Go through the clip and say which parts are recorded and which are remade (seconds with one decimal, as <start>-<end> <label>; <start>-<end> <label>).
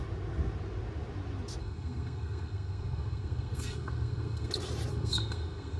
0.0-1.6 recorded; 1.6-4.5 remade; 4.5-4.9 recorded; 4.9-5.8 remade